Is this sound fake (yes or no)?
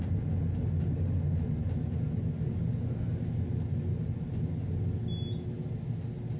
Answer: no